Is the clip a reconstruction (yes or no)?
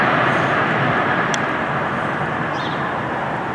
no